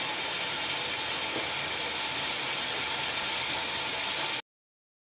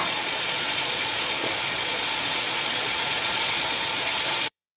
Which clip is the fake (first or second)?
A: second